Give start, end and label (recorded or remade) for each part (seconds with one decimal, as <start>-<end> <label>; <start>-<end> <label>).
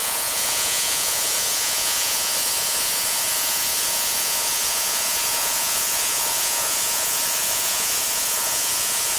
0.0-9.2 remade